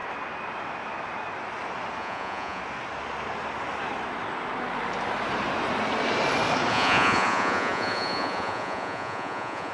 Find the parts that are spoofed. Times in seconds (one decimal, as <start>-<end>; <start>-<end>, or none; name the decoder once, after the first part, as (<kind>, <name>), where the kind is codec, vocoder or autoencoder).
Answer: 2.0-2.6 (vocoder, Vocos); 6.7-9.7